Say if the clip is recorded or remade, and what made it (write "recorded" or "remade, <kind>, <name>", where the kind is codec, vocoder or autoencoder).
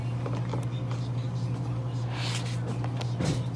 recorded